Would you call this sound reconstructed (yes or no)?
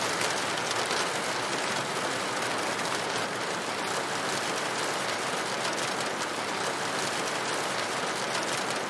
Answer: no